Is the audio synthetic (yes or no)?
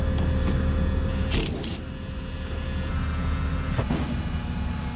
no